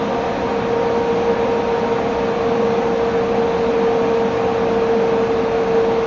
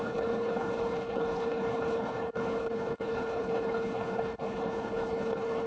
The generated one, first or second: second